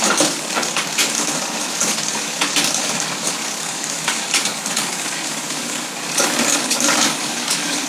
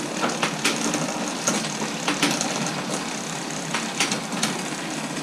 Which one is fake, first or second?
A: first